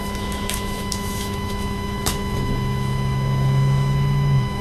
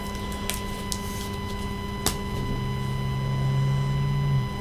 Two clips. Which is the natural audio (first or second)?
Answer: second